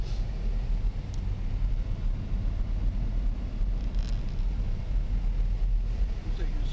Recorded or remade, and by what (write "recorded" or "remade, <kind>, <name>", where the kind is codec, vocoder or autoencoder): recorded